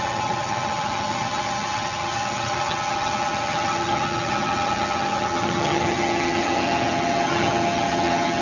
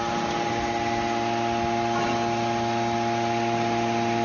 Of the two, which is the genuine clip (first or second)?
second